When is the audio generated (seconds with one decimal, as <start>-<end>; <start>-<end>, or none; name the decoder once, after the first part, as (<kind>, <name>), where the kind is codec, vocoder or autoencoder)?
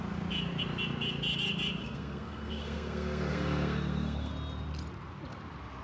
1.8-4.3 (codec, SNAC)